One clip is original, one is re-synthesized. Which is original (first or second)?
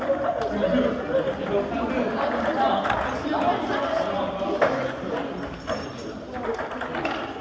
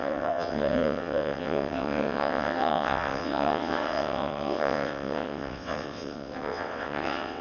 first